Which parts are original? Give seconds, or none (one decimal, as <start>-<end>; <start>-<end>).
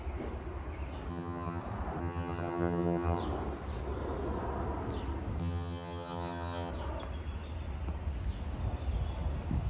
0.0-1.1; 1.6-2.0; 3.2-5.4; 6.7-9.7